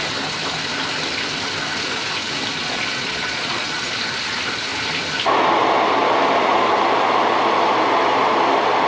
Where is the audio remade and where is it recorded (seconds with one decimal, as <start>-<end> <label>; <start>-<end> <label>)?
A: 0.0-2.6 recorded; 2.6-3.9 remade; 3.9-8.9 recorded

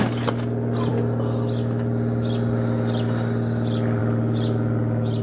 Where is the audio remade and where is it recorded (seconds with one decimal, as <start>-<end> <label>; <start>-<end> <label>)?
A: 0.0-5.2 recorded

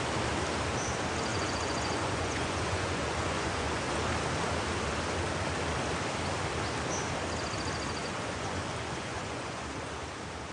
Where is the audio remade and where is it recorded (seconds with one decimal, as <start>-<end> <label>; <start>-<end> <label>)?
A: 0.0-1.3 recorded; 1.3-3.8 remade; 3.8-8.0 recorded; 8.0-10.0 remade; 10.0-10.5 recorded

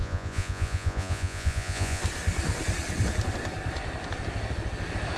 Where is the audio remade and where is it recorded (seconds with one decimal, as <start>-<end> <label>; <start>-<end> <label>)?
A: 0.0-2.0 remade; 2.0-5.2 recorded